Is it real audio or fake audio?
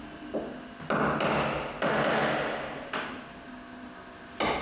real